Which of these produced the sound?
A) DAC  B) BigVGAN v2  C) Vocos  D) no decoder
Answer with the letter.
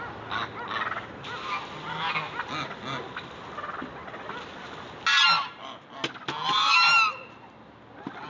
D